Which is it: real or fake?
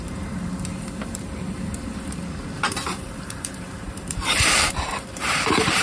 fake